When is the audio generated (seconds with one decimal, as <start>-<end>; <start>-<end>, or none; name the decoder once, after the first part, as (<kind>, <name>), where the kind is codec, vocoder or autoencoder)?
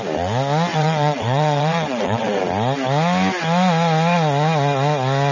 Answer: 0.7-2.4 (vocoder, WaveNeXt)